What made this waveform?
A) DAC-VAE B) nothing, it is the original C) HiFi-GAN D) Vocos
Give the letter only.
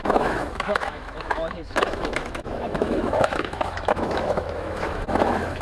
A